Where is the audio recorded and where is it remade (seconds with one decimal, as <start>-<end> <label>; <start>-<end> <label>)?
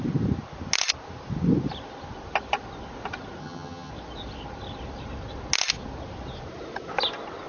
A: 0.0-3.4 recorded; 3.4-3.9 remade; 3.9-7.5 recorded